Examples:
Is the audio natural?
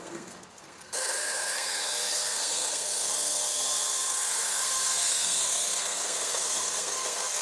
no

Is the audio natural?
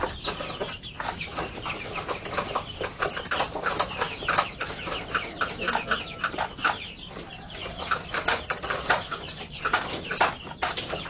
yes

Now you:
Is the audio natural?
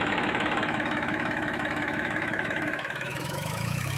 no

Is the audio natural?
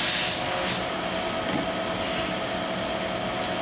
yes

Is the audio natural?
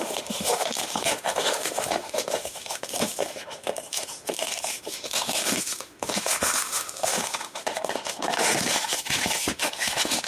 no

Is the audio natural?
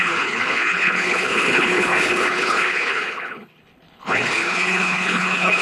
no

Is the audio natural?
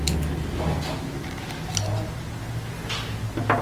yes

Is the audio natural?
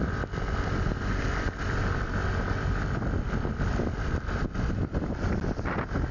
yes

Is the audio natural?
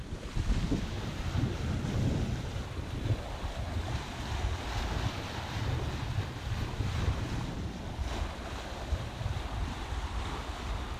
yes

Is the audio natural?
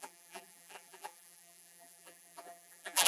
no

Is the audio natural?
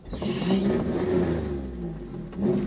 yes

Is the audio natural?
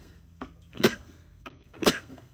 no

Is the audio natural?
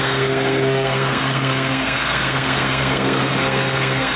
no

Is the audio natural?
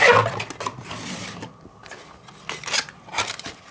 yes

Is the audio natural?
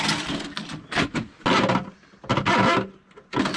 yes